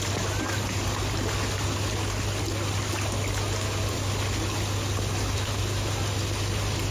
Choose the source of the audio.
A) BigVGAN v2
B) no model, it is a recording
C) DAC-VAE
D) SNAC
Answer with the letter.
B